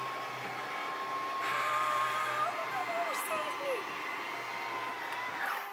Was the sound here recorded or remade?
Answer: recorded